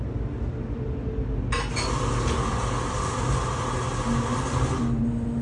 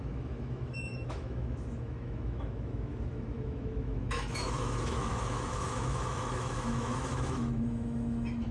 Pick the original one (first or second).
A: first